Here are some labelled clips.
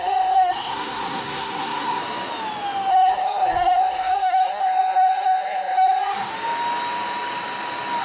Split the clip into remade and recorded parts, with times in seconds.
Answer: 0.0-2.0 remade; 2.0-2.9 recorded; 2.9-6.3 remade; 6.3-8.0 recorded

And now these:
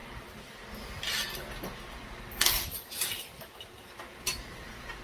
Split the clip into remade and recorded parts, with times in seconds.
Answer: 0.0-0.6 remade; 0.6-2.7 recorded; 2.7-3.6 remade; 3.6-5.0 recorded

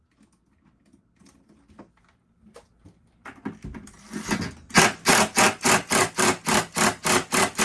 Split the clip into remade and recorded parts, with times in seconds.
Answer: 0.0-7.6 recorded

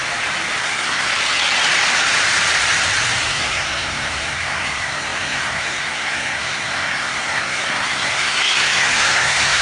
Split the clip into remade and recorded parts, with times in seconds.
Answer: 0.0-0.6 recorded; 0.6-1.1 remade; 1.1-3.3 recorded; 3.3-9.6 remade